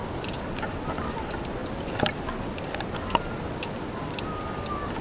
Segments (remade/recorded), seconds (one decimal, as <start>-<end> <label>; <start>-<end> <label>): 0.0-5.0 recorded